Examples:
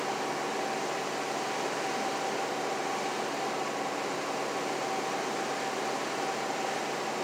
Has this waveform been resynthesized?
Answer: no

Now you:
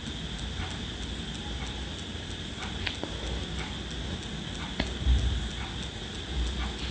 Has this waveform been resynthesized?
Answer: no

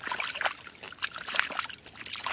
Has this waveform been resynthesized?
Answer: no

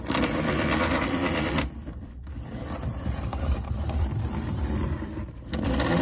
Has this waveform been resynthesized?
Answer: yes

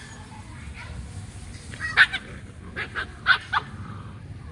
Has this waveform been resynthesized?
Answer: yes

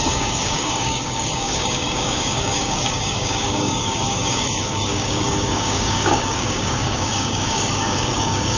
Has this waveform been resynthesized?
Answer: yes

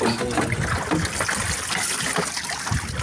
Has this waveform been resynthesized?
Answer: no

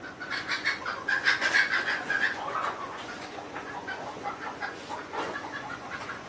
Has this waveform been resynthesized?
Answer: yes